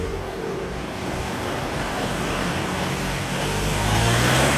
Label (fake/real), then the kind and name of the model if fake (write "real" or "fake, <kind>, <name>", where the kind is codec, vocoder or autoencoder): fake, codec, DAC